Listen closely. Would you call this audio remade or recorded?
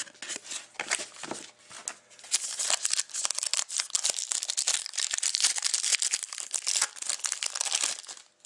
recorded